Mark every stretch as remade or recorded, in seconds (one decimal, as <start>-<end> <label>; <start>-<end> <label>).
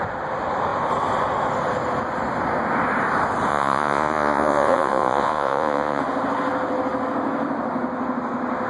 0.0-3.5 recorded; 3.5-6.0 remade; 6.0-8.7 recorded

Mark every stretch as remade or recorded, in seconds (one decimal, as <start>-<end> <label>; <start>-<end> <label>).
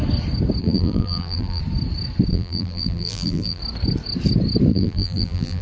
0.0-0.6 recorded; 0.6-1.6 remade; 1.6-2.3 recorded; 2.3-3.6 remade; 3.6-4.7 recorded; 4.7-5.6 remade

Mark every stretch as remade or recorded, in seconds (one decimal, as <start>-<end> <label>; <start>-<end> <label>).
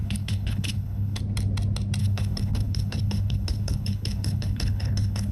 0.0-1.2 remade; 1.2-2.0 recorded; 2.0-5.3 remade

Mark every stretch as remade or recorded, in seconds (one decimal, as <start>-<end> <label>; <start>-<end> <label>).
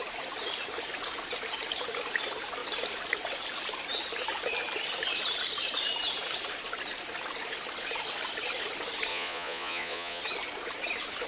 0.0-9.1 recorded; 9.1-10.2 remade; 10.2-11.3 recorded